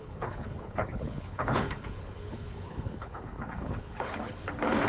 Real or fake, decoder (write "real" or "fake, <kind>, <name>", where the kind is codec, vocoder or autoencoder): fake, codec, HILCodec